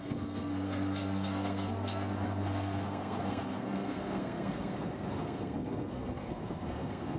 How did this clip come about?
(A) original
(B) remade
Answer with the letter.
B